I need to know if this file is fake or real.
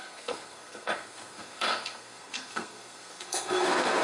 fake